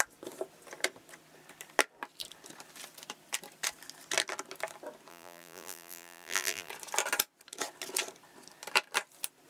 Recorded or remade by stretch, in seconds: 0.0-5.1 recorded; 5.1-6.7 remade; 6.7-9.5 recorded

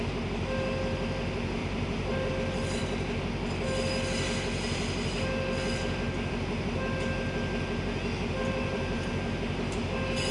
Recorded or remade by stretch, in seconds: 0.0-1.6 recorded; 1.6-2.3 remade; 2.3-8.4 recorded; 8.4-9.1 remade; 9.1-10.3 recorded

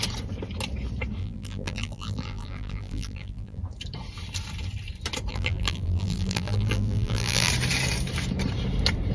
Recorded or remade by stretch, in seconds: 0.0-1.2 recorded; 1.2-3.6 remade; 3.6-5.3 recorded; 5.3-7.5 remade; 7.5-9.1 recorded